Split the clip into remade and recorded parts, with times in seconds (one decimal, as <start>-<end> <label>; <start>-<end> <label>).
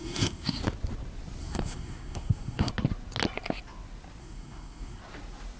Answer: 0.0-0.6 remade; 0.6-1.4 recorded; 1.4-2.7 remade; 2.7-4.2 recorded; 4.2-5.0 remade; 5.0-5.6 recorded